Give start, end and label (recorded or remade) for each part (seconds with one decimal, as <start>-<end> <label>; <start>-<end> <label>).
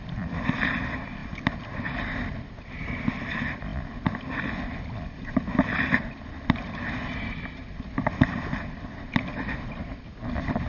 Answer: 0.0-10.7 recorded